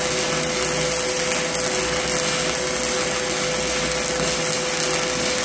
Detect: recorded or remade recorded